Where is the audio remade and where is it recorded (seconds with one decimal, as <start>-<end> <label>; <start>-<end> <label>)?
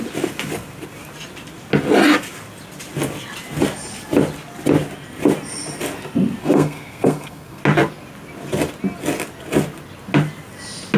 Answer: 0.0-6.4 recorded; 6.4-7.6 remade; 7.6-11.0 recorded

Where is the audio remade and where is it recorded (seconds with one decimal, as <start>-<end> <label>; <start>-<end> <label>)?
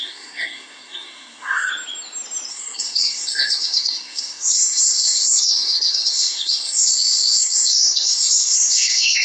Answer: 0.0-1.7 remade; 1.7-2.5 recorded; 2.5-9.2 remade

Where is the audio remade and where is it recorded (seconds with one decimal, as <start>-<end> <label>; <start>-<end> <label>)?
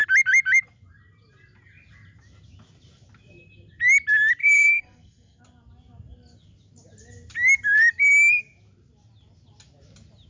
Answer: 0.0-4.4 recorded; 4.4-5.4 remade; 5.4-10.3 recorded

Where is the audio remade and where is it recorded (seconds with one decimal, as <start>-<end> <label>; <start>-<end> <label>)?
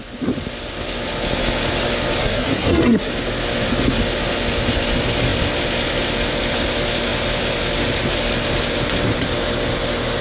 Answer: 0.0-2.2 recorded; 2.2-3.1 remade; 3.1-10.2 recorded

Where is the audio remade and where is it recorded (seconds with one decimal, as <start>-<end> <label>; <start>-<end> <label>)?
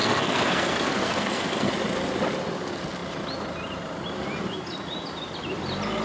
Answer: 0.0-1.7 remade; 1.7-6.0 recorded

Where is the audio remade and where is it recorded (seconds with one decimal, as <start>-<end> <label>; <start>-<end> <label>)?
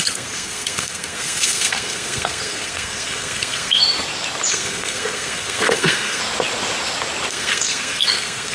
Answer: 0.0-3.8 remade; 3.8-4.5 recorded; 4.5-6.2 remade; 6.2-7.3 recorded; 7.3-8.5 remade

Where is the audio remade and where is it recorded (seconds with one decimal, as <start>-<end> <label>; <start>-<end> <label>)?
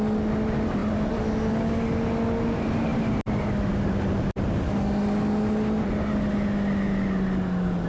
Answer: 0.0-7.9 recorded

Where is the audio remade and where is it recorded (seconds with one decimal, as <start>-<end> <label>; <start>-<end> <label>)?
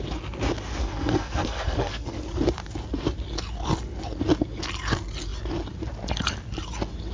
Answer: 0.0-0.8 recorded; 0.8-2.2 remade; 2.2-7.1 recorded